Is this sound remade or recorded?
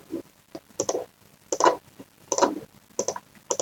recorded